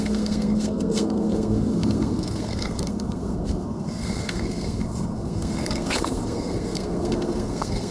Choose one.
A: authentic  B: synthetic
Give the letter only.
B